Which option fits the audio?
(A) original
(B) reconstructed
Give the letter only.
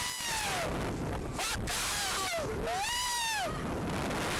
A